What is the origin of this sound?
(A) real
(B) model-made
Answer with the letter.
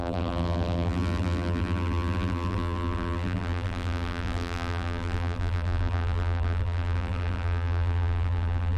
B